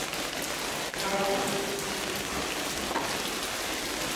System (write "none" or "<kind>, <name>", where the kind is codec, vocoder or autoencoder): none